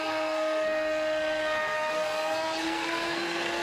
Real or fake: fake